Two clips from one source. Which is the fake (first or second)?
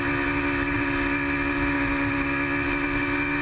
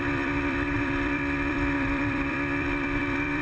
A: second